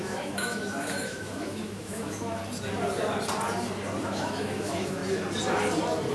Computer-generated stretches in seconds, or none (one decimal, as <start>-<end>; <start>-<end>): 0.0-2.4; 4.0-5.0